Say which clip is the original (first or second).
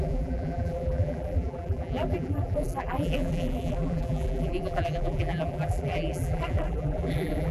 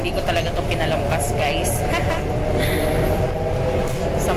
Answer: second